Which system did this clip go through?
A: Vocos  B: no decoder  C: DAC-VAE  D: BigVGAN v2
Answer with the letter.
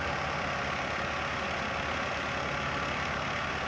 B